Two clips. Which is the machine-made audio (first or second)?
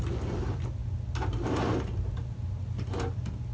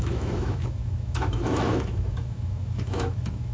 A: second